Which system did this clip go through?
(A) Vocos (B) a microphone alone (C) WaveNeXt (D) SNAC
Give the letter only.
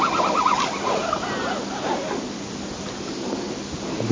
B